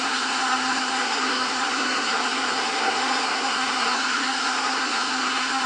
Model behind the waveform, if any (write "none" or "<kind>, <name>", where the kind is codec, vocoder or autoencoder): codec, SNAC